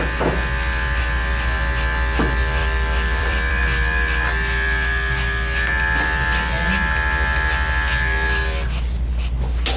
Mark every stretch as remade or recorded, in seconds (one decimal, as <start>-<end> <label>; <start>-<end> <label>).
0.0-2.6 recorded; 2.6-3.6 remade; 3.6-9.8 recorded